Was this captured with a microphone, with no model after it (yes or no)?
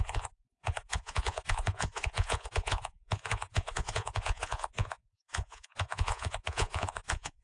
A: no